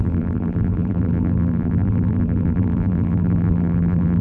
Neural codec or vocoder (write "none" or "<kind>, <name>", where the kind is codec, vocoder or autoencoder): vocoder, BigVGAN v2